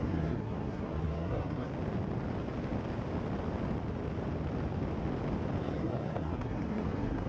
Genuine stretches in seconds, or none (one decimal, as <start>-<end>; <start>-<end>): 1.7-5.6